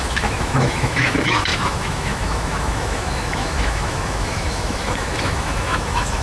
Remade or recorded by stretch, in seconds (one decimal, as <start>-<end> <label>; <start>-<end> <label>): 0.0-6.2 remade